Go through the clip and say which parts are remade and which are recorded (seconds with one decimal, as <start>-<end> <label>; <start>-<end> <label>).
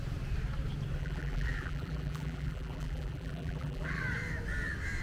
0.0-1.0 recorded; 1.0-4.0 remade; 4.0-5.0 recorded